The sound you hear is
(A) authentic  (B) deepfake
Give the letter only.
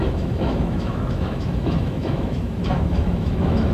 B